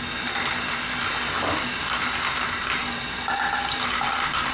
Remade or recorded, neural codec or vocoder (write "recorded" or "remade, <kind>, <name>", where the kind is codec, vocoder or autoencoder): recorded